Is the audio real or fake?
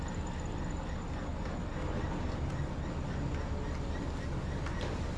real